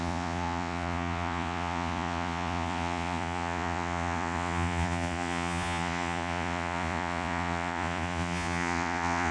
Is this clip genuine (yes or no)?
no